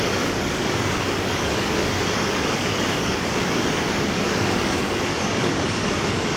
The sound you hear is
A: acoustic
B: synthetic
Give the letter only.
B